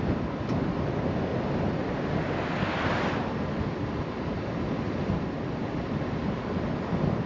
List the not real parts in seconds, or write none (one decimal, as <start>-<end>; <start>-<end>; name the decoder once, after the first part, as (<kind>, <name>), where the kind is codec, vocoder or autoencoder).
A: 0.0-1.3 (vocoder, BigVGAN v2); 3.3-7.3